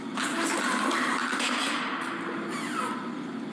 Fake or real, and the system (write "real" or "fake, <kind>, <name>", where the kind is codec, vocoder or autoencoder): real